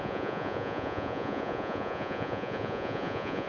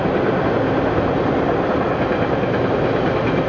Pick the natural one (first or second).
second